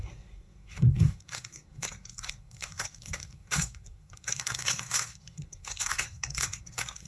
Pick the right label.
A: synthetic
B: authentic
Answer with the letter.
A